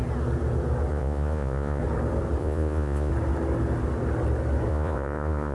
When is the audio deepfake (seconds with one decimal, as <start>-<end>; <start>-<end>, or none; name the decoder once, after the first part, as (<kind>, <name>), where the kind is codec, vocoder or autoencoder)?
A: 0.9-1.8 (vocoder, Vocos); 2.4-3.1; 4.7-5.5